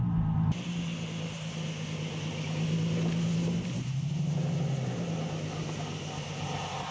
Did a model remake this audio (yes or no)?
no